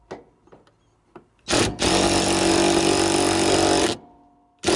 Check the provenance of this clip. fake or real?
real